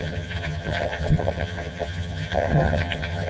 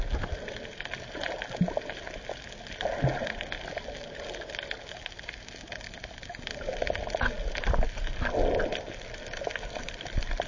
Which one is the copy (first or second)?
first